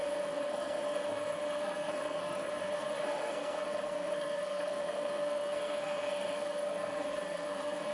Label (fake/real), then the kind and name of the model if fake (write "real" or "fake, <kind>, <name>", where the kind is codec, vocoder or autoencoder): fake, codec, SNAC